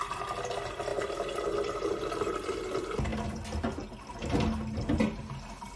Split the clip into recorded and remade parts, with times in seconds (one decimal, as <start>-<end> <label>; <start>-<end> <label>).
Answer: 0.0-5.8 recorded